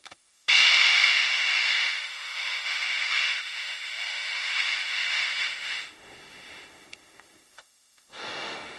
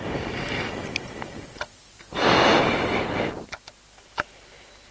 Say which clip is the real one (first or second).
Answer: second